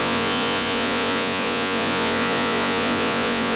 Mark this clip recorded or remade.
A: remade